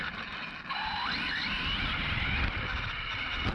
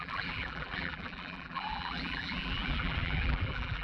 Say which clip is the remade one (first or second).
second